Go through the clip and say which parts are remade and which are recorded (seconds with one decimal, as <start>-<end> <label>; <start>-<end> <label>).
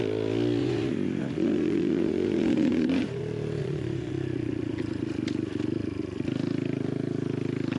0.0-0.6 recorded; 0.6-3.2 remade; 3.2-3.6 recorded; 3.6-4.1 remade; 4.1-7.8 recorded